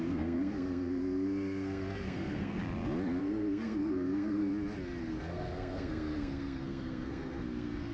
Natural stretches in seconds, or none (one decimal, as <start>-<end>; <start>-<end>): 2.6-3.2; 4.5-5.0